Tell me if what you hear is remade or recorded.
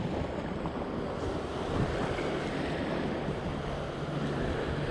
recorded